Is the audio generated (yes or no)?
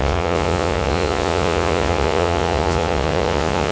yes